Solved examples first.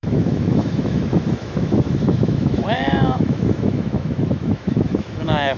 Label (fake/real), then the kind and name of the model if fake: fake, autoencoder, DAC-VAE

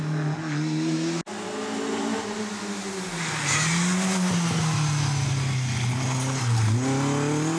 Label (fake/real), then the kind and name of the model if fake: real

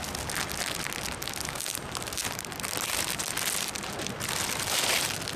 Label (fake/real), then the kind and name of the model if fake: real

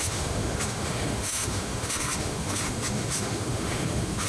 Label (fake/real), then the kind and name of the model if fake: fake, autoencoder, DAC-VAE